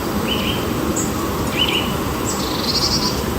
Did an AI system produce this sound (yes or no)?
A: no